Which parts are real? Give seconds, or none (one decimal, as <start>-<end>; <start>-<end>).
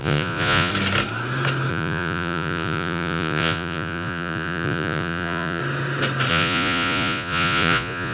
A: 0.7-1.7; 5.6-6.3